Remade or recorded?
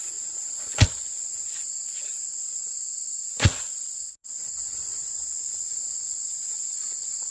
remade